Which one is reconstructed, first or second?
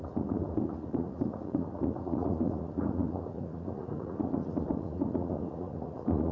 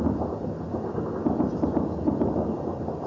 first